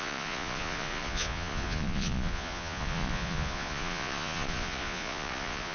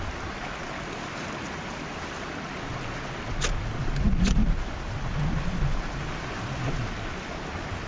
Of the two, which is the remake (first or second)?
first